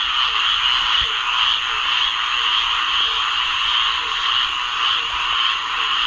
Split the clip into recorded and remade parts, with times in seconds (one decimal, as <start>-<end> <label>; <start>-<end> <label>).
0.0-6.1 recorded